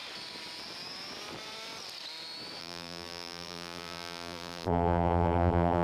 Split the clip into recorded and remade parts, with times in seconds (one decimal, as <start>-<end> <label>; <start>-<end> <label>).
0.0-2.6 recorded; 2.6-5.8 remade